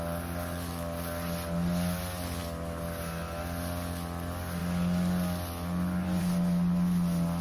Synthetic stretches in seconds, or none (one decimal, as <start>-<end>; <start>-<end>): none